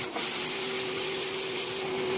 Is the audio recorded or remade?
recorded